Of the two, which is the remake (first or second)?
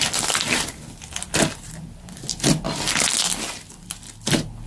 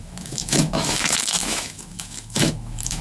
second